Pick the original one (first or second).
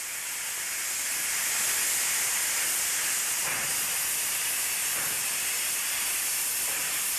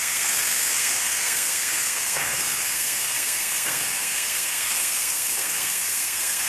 first